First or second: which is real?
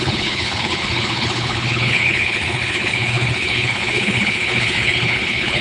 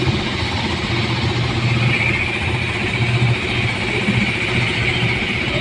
second